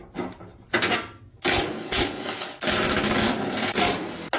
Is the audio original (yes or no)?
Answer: yes